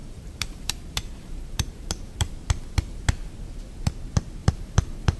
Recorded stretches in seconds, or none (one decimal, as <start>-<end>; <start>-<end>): 2.3-4.4